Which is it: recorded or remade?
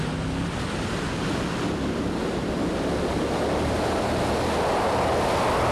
recorded